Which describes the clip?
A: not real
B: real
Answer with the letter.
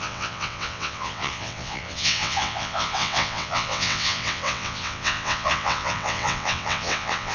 A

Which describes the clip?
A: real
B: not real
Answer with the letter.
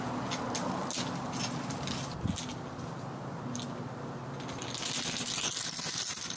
A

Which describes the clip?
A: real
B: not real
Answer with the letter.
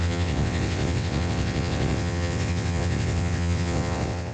B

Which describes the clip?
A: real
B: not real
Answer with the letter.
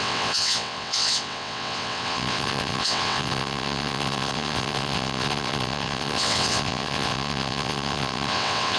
B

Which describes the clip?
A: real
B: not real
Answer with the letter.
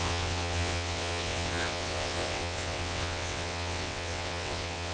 B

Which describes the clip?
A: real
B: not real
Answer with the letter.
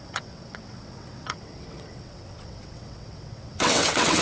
B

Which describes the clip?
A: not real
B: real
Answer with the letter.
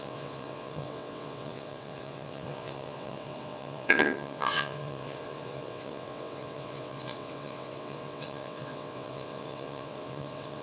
A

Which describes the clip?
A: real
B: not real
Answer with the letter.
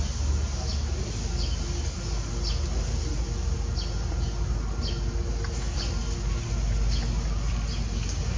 A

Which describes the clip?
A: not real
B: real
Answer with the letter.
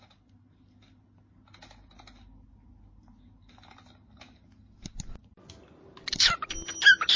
B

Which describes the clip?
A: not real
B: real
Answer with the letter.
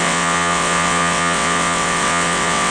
A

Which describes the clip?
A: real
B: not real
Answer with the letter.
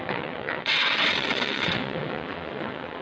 B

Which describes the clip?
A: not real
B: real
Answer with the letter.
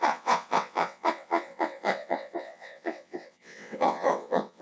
A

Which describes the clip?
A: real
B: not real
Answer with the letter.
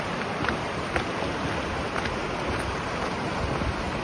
A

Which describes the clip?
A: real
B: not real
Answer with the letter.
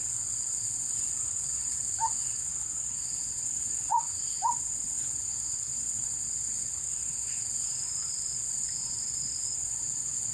B